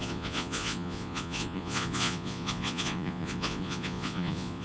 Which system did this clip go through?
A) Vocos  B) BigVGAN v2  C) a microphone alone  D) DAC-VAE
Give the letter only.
A